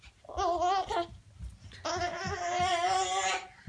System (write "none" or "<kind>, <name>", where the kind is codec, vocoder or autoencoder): none